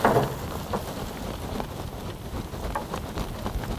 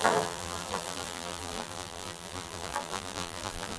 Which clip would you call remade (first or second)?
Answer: second